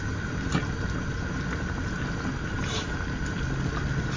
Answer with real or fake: real